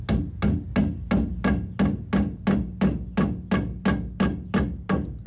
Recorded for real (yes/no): yes